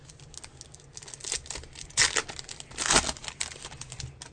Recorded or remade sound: recorded